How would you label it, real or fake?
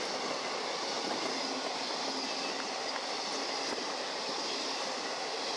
real